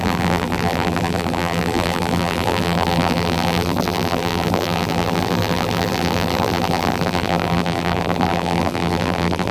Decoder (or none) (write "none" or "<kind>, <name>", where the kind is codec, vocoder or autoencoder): vocoder, BigVGAN v2